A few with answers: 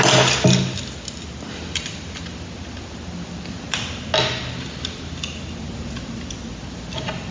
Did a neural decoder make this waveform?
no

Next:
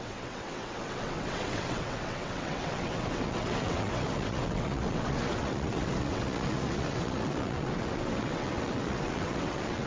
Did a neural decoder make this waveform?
yes